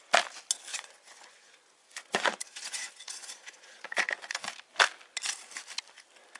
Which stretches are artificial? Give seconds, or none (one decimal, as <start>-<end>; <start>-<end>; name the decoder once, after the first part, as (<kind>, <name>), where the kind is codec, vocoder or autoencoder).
0.7-4.5 (vocoder, Vocos)